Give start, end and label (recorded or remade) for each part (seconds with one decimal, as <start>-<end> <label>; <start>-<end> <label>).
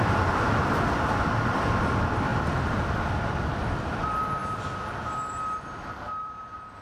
0.0-2.3 remade; 2.3-3.1 recorded; 3.1-4.4 remade; 4.4-6.2 recorded; 6.2-6.8 remade